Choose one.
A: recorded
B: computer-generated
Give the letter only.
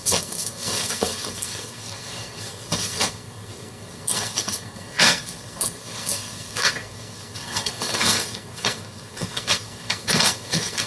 B